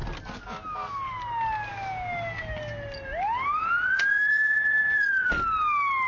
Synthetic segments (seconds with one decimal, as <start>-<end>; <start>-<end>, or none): 3.6-5.3